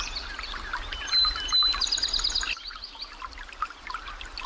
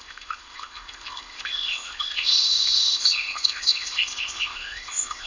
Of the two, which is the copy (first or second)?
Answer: second